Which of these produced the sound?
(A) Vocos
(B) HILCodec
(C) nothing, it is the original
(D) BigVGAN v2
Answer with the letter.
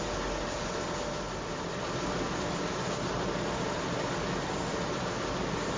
C